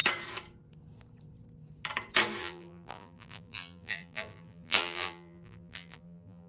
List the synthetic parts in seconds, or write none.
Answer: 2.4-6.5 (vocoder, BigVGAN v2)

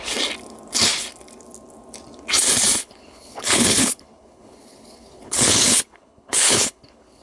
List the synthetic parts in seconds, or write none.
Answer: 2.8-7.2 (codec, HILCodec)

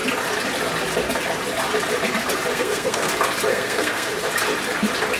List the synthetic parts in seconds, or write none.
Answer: 2.5-3.1 (codec, SNAC); 3.5-4.1

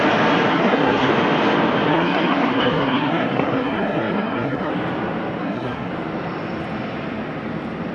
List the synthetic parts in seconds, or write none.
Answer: 0.5-1.1 (codec, SNAC); 1.9-4.7; 5.4-5.9

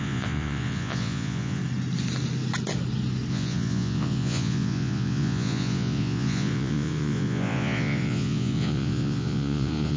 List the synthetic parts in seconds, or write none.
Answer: 0.0-1.6 (vocoder, Vocos); 3.3-10.0